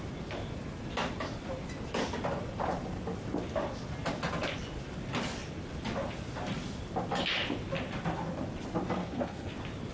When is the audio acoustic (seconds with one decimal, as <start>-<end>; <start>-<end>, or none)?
0.0-9.0; 9.5-9.9